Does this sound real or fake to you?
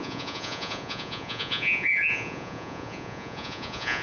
fake